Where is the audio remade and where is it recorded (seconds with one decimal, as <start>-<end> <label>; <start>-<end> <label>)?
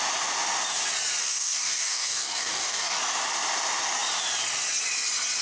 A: 0.0-1.2 recorded; 1.2-3.0 remade; 3.0-5.4 recorded